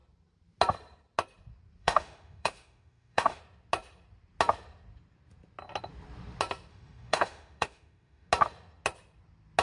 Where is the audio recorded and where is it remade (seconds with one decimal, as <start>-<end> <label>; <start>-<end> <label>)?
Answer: 0.0-1.8 recorded; 1.8-3.4 remade; 3.4-6.7 recorded; 6.7-8.3 remade; 8.3-9.6 recorded

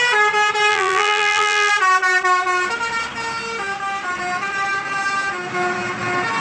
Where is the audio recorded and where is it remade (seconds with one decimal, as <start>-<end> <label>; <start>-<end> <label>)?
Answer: 0.0-0.7 recorded; 0.7-1.7 remade; 1.7-6.4 recorded

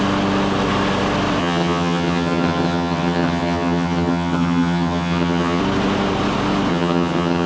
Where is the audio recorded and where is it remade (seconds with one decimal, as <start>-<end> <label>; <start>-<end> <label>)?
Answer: 0.0-1.4 recorded; 1.4-5.6 remade; 5.6-6.7 recorded; 6.7-7.5 remade

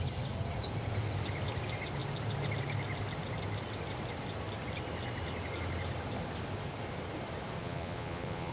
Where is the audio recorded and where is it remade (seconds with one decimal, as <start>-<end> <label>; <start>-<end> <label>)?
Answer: 0.0-7.6 recorded; 7.6-8.5 remade

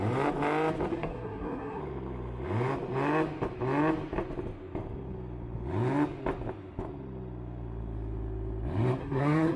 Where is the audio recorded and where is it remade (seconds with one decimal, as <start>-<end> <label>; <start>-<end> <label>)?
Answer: 0.0-0.9 recorded; 0.9-1.8 remade; 1.8-9.0 recorded; 9.0-9.6 remade